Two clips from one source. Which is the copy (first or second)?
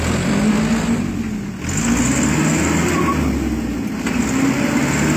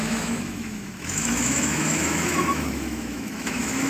second